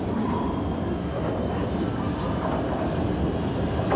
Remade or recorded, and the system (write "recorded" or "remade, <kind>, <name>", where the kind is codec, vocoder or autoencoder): recorded